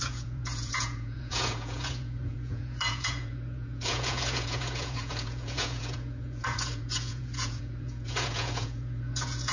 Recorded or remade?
remade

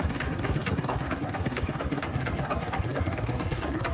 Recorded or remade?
remade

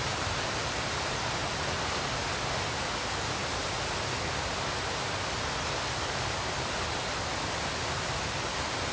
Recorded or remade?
recorded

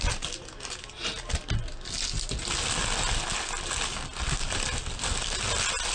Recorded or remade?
recorded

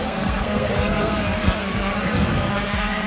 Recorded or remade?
remade